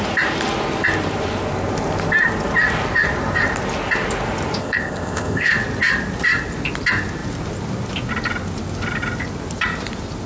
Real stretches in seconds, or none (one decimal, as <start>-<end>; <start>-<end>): 0.0-4.6; 5.5-10.3